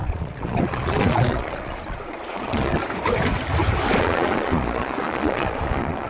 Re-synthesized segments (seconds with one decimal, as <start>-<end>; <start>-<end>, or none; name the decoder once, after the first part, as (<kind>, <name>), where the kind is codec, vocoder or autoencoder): 0.0-2.8 (vocoder, Vocos); 4.0-6.1